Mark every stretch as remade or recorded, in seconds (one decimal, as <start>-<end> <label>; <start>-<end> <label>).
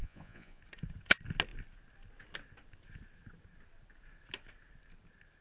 0.0-0.6 remade; 0.6-5.4 recorded